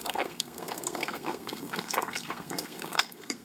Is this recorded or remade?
remade